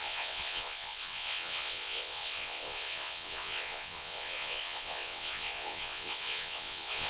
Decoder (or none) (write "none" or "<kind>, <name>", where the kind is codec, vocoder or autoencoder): vocoder, WaveNeXt